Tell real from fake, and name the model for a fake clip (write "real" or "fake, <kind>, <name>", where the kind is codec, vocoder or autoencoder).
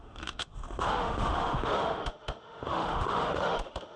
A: fake, autoencoder, DAC-VAE